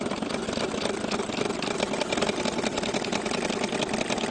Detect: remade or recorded recorded